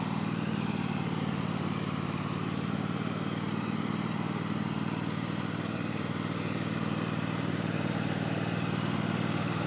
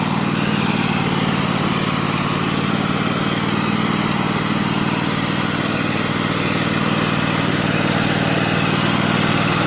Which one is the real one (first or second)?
second